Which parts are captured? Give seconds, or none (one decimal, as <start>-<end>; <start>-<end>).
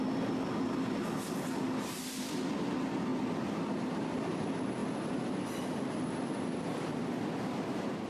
0.0-4.8; 7.6-8.1